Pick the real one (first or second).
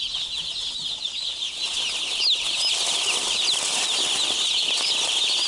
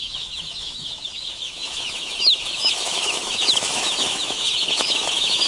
first